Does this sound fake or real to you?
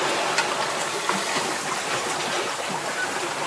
real